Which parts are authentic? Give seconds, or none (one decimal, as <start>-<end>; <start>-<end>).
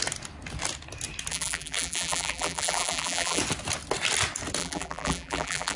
0.0-1.3; 3.4-4.6